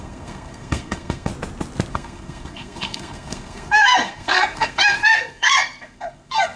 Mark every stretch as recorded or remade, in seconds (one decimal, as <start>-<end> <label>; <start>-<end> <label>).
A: 0.0-1.3 remade; 1.3-1.9 recorded; 1.9-6.6 remade